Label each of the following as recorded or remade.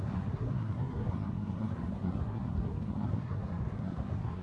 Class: remade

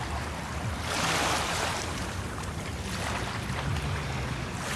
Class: recorded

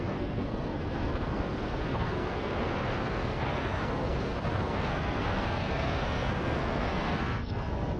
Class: remade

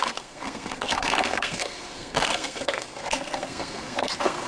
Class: remade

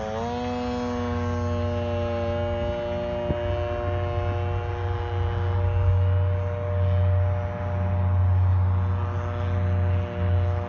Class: recorded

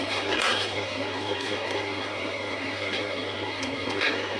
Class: remade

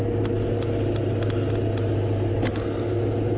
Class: recorded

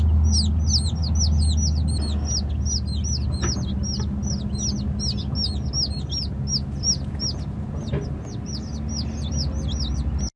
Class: recorded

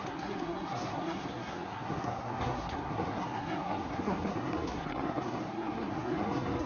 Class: remade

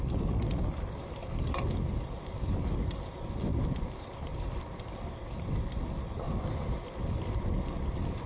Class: recorded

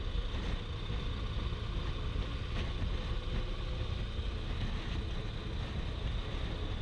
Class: recorded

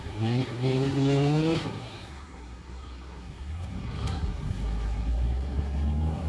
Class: remade